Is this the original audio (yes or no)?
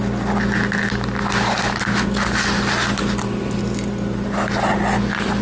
yes